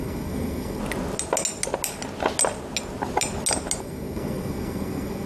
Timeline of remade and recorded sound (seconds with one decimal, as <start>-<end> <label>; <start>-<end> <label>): 0.0-0.8 remade; 0.8-3.8 recorded; 3.8-5.3 remade